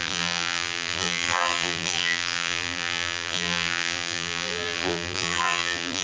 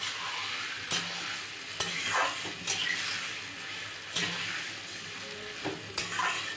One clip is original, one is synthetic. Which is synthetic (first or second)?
first